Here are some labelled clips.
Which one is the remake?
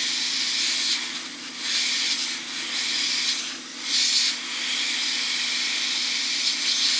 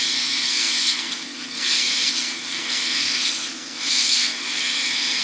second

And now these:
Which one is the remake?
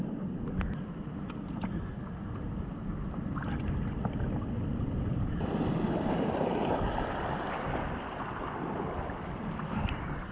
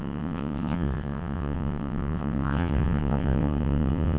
second